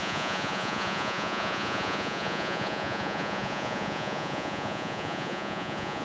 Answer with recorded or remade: remade